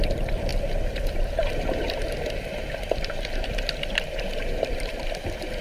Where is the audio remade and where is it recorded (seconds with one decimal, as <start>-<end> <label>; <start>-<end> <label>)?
0.0-5.6 recorded